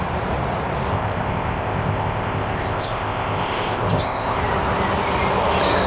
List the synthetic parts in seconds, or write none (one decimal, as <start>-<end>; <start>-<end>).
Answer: 0.9-4.4